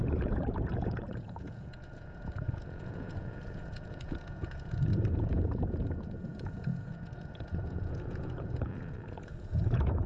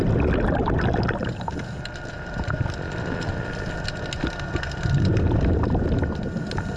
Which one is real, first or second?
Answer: second